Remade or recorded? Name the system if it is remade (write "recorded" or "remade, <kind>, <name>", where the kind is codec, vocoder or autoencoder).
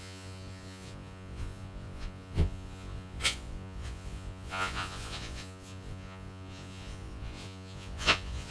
remade, vocoder, Vocos